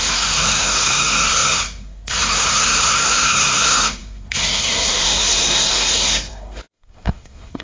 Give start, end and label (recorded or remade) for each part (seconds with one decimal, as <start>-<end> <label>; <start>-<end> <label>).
0.0-7.6 remade